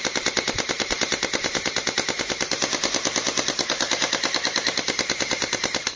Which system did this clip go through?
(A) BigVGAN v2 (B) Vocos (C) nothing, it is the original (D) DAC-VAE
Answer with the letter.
A